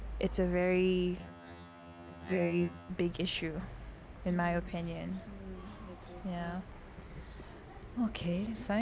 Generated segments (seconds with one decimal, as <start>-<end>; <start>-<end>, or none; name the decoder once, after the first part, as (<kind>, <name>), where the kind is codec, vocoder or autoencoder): 1.2-2.9 (vocoder, HiFi-GAN)